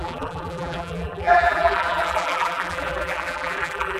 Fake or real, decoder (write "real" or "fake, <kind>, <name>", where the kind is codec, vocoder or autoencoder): fake, vocoder, BigVGAN v2